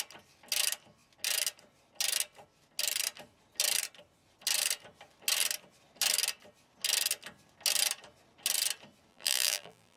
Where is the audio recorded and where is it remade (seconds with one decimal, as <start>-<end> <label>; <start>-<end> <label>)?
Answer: 0.0-9.1 recorded; 9.1-10.0 remade